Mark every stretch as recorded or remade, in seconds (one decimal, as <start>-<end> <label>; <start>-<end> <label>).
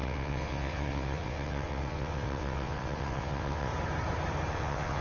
0.0-3.7 remade; 3.7-4.5 recorded; 4.5-5.0 remade